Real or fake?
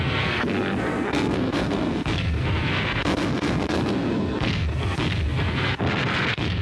fake